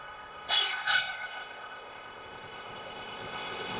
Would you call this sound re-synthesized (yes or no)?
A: yes